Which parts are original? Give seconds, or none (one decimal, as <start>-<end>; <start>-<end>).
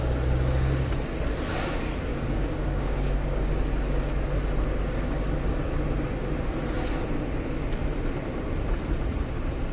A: 0.0-2.1; 3.5-9.7